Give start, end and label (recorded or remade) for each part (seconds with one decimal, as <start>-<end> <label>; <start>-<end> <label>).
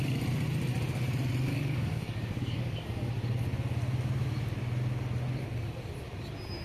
0.0-1.5 recorded; 1.5-3.1 remade; 3.1-6.6 recorded